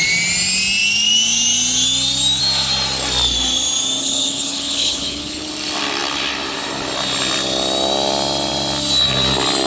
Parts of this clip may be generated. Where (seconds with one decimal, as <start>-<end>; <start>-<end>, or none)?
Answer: 4.0-5.5